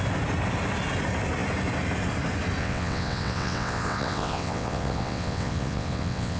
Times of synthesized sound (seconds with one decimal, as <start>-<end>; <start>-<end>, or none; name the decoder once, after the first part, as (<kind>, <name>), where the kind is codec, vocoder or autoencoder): 2.6-6.4 (vocoder, WaveNeXt)